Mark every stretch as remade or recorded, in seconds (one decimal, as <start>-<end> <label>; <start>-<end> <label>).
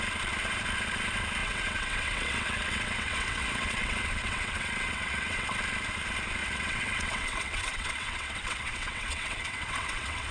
0.0-1.4 recorded; 1.4-5.6 remade; 5.6-6.4 recorded; 6.4-10.3 remade